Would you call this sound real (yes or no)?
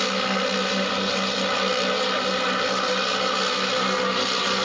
yes